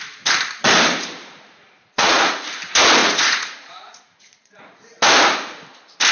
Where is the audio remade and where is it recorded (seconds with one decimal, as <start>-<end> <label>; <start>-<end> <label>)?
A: 0.0-1.5 recorded; 1.5-2.3 remade; 2.3-3.0 recorded; 3.0-5.0 remade; 5.0-6.1 recorded